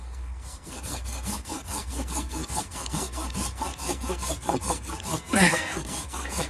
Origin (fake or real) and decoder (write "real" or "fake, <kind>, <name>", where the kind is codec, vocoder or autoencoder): fake, codec, SNAC